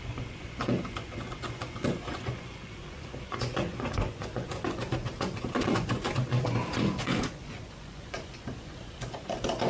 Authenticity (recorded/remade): remade